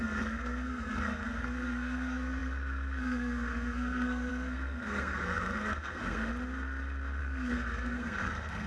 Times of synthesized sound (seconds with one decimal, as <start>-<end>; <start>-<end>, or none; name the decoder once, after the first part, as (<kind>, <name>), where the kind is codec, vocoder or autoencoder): 0.0-6.3 (codec, SNAC); 7.2-8.7